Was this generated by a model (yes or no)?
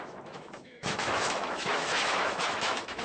yes